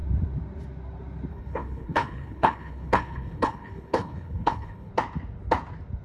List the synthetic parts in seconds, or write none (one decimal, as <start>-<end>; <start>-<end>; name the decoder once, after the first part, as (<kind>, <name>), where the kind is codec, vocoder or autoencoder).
1.3-4.9 (codec, HILCodec)